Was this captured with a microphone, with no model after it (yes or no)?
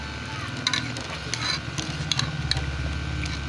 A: yes